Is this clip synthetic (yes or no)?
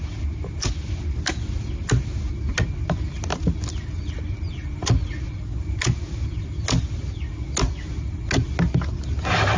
no